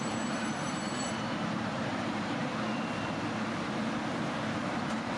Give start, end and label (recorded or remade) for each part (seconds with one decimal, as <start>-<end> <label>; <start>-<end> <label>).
0.0-2.4 remade; 2.4-4.8 recorded; 4.8-5.2 remade